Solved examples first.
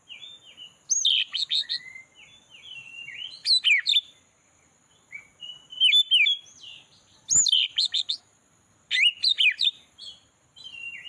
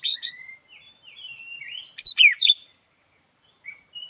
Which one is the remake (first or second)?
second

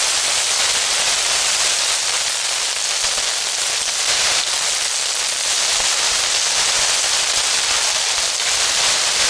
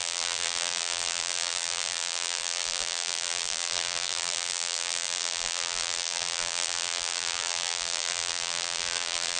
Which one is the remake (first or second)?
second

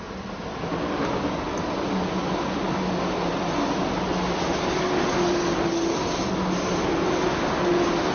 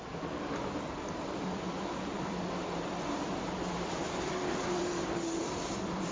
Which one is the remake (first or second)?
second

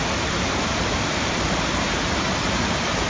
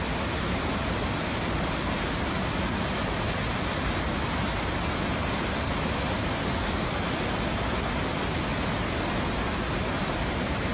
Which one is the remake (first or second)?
first